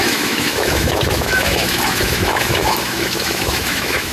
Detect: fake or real fake